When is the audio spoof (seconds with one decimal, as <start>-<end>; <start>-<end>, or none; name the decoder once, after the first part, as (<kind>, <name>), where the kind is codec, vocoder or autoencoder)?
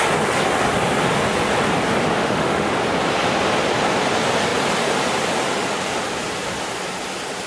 2.2-2.7 (autoencoder, DAC-VAE)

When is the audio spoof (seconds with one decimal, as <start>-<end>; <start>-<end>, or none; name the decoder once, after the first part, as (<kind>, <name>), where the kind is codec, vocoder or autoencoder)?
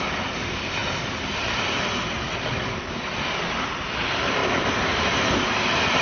none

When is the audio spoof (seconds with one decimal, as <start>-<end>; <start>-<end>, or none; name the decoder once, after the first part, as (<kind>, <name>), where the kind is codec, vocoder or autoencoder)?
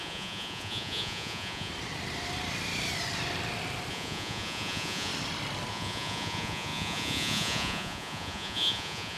0.0-1.7 (vocoder, Vocos); 3.9-5.1; 5.7-9.2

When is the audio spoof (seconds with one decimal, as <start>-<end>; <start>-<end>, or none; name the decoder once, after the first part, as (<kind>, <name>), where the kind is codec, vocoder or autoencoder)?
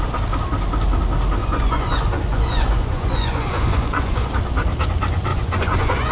1.4-4.3 (vocoder, Vocos); 5.3-6.1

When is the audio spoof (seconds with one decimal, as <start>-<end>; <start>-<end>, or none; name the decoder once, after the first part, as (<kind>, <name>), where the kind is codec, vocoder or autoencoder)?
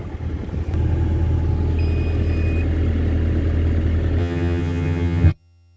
4.2-5.8 (vocoder, HiFi-GAN)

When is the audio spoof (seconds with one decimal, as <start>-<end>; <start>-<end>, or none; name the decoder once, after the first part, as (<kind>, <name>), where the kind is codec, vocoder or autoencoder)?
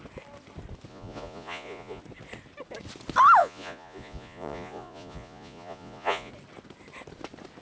0.9-2.0 (vocoder, Vocos); 3.4-6.3